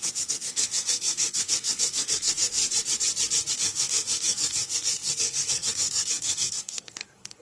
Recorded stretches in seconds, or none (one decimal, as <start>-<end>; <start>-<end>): 2.6-3.5

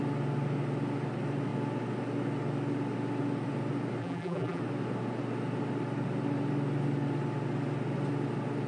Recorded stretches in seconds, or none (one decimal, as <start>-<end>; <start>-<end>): 0.0-4.0; 4.6-8.7